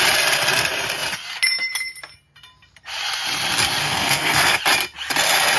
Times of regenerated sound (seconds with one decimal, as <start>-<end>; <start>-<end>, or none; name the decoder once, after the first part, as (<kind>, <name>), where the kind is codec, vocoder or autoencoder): 3.8-4.6 (codec, SNAC)